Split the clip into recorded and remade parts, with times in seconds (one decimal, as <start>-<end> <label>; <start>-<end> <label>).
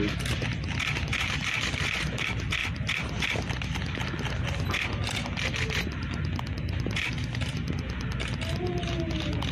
0.0-9.5 recorded